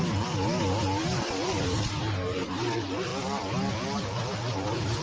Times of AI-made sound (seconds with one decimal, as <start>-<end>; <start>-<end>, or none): 0.0-3.1; 3.7-5.0